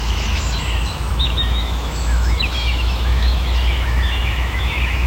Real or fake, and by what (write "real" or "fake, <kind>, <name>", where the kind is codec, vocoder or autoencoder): fake, autoencoder, DAC-VAE